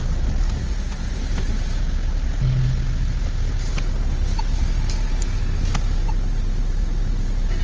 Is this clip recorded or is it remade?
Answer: recorded